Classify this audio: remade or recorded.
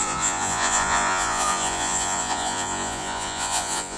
remade